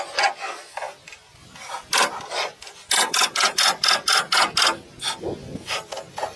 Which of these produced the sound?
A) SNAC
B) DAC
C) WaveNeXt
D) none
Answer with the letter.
D